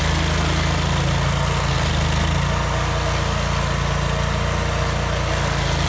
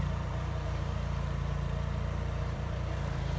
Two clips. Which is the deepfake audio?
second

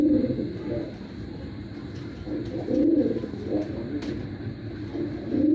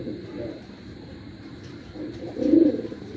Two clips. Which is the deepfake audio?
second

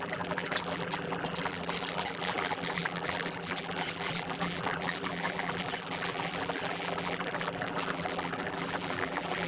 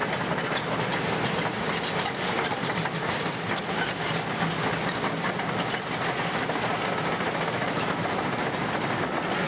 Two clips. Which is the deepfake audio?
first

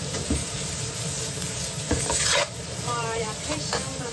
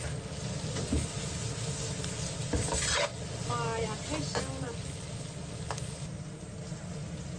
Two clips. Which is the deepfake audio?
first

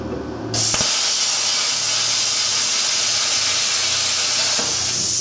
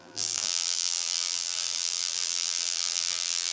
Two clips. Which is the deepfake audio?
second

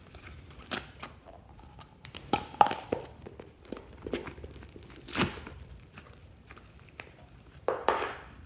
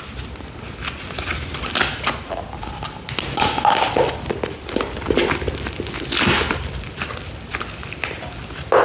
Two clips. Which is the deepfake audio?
first